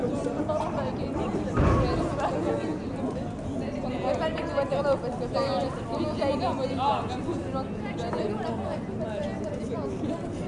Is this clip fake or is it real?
real